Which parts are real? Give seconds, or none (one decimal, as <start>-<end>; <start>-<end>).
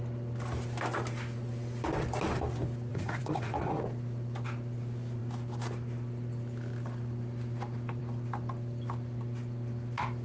0.0-2.9; 3.8-10.2